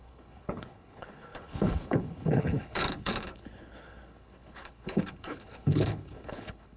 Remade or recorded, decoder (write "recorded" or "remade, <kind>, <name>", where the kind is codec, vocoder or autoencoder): remade, codec, HILCodec